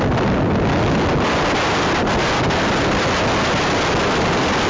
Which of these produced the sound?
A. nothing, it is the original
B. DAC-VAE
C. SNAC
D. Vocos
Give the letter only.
A